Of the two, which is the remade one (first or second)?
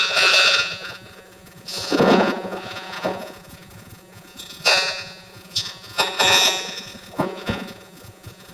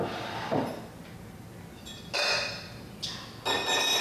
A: first